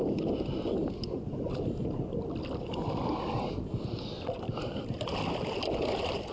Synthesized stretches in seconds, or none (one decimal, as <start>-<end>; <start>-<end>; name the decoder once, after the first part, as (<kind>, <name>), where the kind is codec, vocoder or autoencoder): none